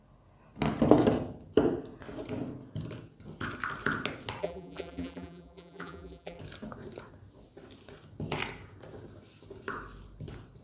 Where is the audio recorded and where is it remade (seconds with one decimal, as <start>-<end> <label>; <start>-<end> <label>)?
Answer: 0.0-4.4 recorded; 4.4-6.4 remade; 6.4-10.6 recorded